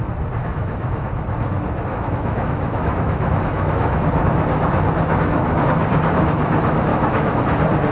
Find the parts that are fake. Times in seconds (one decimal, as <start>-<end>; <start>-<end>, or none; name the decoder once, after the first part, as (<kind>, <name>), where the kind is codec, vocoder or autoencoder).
0.4-1.1 (autoencoder, DAC-VAE); 1.9-4.0; 6.9-7.4